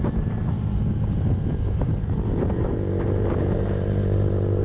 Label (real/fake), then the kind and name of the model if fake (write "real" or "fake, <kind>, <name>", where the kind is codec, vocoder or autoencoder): fake, vocoder, BigVGAN v2